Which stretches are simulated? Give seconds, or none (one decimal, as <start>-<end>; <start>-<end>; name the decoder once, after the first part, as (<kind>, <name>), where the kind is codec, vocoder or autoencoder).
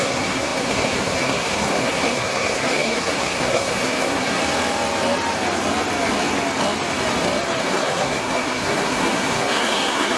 0.0-4.4 (codec, SNAC); 7.6-10.2